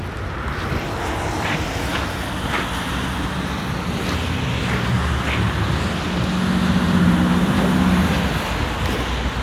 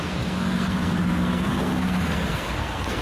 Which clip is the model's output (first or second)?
second